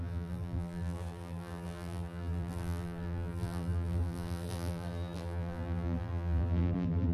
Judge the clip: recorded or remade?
remade